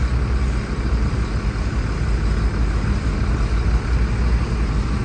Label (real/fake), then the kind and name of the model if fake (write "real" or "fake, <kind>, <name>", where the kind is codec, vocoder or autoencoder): real